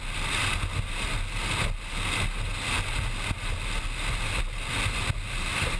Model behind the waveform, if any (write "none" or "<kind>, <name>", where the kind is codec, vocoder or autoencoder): none